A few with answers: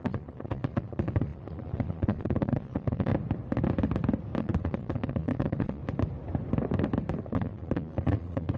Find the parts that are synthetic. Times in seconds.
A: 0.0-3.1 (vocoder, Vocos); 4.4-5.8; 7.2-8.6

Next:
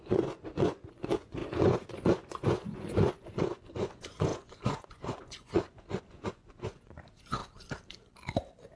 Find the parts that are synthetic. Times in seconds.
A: 0.0-7.4 (vocoder, Vocos)